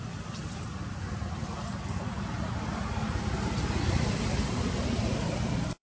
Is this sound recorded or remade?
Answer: recorded